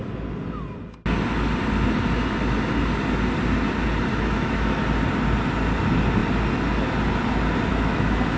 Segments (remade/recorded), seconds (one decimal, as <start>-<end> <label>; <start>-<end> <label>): 0.0-4.1 recorded; 4.1-4.8 remade; 4.8-7.7 recorded; 7.7-8.4 remade

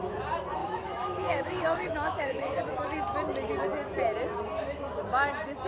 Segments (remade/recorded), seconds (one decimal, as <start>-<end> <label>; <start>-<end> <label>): 0.0-0.6 recorded; 0.6-2.6 remade; 2.6-5.7 recorded

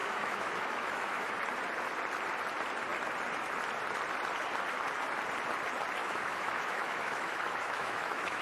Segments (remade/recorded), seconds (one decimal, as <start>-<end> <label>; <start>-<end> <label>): 0.0-1.3 remade; 1.3-6.0 recorded; 6.0-8.4 remade